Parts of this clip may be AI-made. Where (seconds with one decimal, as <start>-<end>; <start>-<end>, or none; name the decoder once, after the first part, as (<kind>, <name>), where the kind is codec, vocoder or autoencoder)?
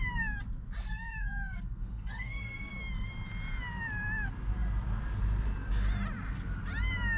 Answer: 0.8-2.7 (codec, SNAC)